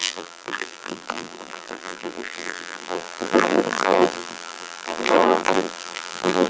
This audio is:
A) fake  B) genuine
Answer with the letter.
A